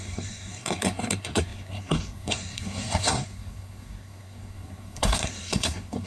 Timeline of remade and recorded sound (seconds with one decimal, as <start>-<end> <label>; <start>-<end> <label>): 0.0-6.1 remade